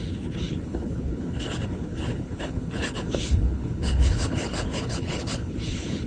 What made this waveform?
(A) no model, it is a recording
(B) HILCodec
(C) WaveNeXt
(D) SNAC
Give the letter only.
B